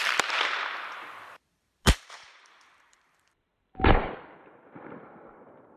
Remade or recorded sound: remade